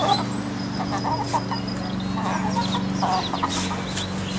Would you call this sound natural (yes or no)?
yes